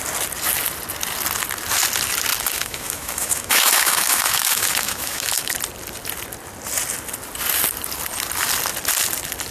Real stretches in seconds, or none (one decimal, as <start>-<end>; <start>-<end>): 0.0-2.3; 5.5-9.5